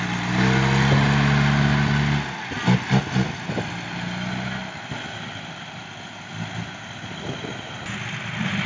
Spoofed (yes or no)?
no